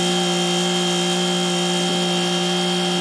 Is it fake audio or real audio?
real